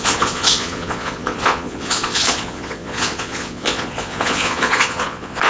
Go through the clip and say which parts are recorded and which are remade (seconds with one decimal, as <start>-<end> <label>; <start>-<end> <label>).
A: 0.0-5.5 remade